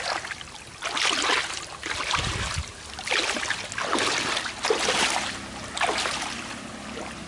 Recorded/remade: recorded